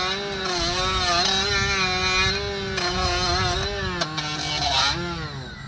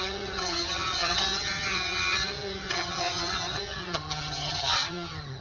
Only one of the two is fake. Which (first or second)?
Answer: second